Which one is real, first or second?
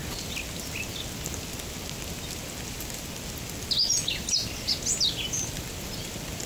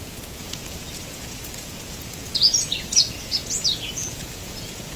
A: first